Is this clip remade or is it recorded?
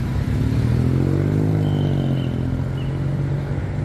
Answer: recorded